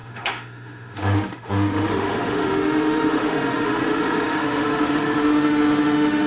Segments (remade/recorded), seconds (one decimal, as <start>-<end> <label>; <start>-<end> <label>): 0.0-6.3 remade